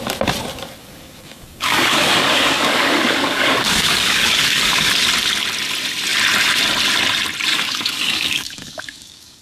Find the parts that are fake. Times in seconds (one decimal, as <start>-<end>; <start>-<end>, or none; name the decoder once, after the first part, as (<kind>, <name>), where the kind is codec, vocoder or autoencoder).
0.8-4.9 (codec, DAC); 7.5-9.4